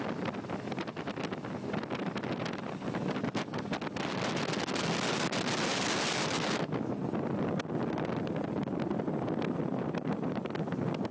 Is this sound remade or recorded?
recorded